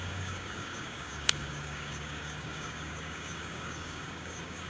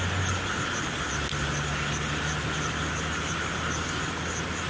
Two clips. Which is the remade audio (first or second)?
first